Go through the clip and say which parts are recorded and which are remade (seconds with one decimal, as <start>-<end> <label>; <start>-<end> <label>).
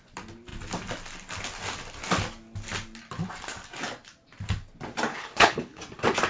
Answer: 0.0-5.1 recorded; 5.1-5.8 remade; 5.8-6.3 recorded